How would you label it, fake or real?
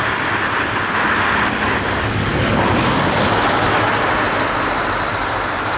real